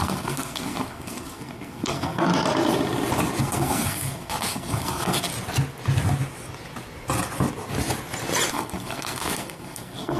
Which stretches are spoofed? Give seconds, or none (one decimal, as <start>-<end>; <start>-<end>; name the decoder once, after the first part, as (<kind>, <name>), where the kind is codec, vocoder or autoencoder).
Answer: 0.0-2.3 (codec, SNAC); 3.4-5.3; 8.5-10.2